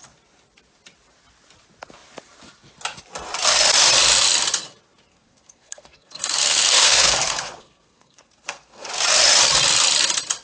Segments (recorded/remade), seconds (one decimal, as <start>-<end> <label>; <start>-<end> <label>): 0.0-5.1 recorded; 5.1-8.9 remade; 8.9-10.4 recorded